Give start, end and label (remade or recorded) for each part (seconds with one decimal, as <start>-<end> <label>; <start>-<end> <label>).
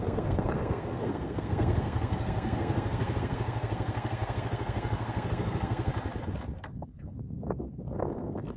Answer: 0.0-5.9 remade; 5.9-6.7 recorded; 6.7-8.6 remade